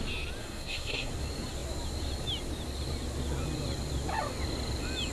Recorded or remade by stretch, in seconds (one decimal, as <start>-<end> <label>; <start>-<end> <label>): 0.0-0.4 recorded; 0.4-1.1 remade; 1.1-5.1 recorded